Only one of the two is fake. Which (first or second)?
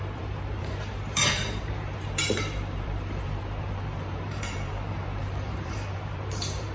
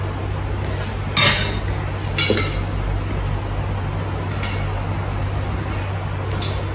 first